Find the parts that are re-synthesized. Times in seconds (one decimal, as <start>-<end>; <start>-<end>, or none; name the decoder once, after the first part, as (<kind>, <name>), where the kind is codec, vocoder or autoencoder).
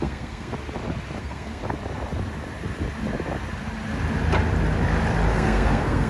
0.0-0.5 (codec, SNAC); 1.2-1.6; 5.3-6.1